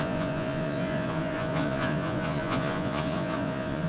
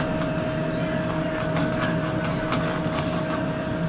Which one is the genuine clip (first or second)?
second